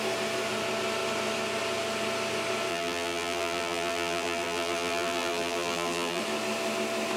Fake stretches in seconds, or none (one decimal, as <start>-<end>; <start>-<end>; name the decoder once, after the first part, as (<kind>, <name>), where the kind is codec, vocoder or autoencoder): 2.7-6.2 (vocoder, BigVGAN v2)